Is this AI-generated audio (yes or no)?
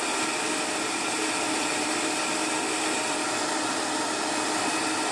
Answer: no